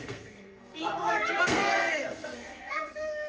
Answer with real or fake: fake